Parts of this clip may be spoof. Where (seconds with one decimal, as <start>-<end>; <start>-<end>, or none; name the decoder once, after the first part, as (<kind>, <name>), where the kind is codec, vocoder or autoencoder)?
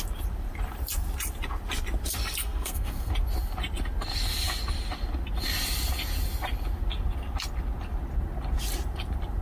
2.4-3.1 (codec, SNAC)